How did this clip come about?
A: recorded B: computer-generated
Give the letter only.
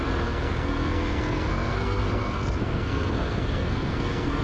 B